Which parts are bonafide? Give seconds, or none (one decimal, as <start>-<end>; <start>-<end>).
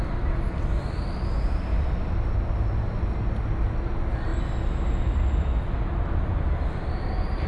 0.0-7.5